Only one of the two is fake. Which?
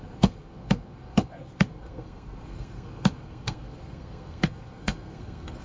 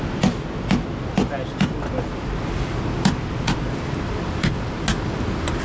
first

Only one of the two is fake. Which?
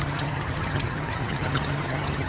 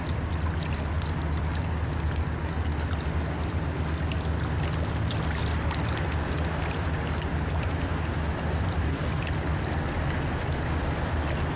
first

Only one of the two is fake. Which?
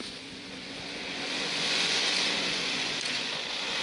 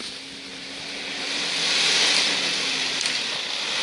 first